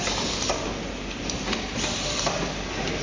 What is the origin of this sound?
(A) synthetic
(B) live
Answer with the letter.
B